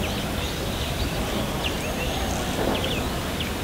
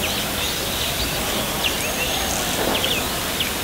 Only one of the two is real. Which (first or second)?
second